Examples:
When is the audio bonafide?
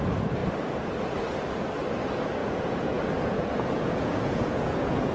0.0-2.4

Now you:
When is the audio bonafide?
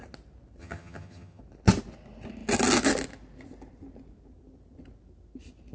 0.0-0.6; 1.4-5.7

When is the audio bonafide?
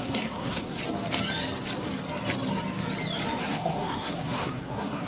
0.8-3.4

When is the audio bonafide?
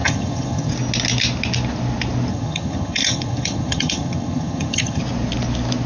0.7-2.3; 5.0-5.9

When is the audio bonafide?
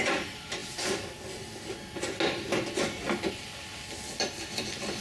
0.6-3.3; 3.7-4.6